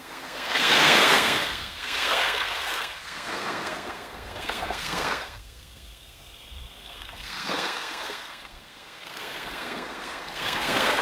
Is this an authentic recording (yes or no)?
no